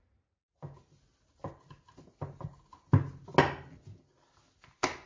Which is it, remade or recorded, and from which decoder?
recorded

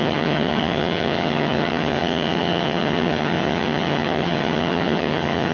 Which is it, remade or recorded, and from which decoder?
remade, vocoder, HiFi-GAN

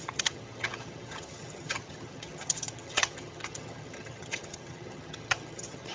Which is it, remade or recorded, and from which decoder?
remade, vocoder, HiFi-GAN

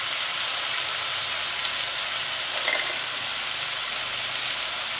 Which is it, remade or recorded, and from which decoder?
recorded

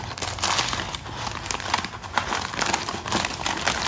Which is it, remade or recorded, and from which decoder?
recorded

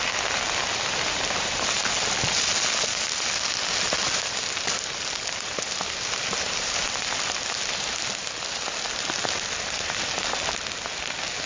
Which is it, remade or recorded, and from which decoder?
recorded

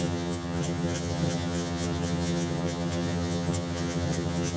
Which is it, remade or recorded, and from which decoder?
remade, vocoder, HiFi-GAN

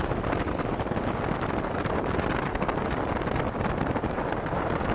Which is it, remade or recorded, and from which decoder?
recorded